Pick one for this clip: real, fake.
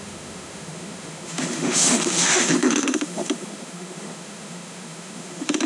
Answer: fake